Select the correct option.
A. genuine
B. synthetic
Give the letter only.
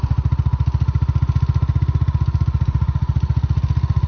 A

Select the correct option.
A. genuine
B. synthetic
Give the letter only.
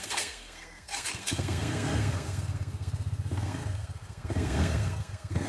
B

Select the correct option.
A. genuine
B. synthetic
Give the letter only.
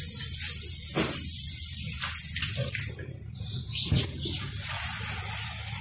A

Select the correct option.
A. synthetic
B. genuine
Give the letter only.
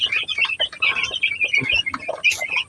B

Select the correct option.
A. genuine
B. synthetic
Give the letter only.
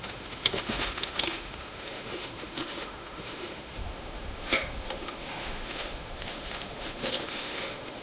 B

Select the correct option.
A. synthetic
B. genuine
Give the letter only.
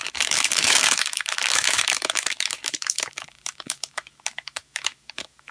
A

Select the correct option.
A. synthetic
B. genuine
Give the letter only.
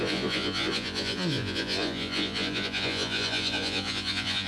A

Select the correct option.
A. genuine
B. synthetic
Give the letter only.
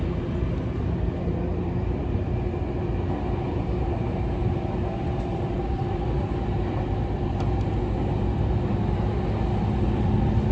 A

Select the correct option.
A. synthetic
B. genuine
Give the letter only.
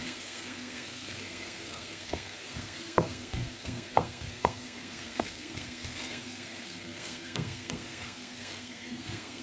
A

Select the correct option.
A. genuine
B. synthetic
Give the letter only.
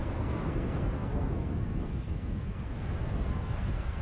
B